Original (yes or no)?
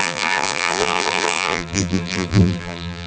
no